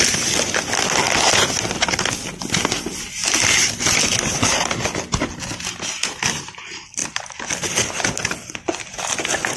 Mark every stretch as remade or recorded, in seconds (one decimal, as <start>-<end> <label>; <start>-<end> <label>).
0.0-9.6 recorded